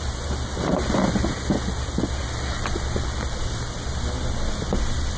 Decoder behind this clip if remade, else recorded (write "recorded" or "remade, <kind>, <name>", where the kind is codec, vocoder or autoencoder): recorded